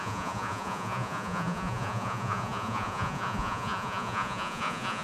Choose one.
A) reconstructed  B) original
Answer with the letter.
A